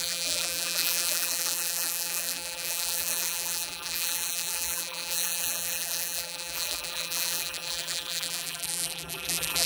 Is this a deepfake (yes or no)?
yes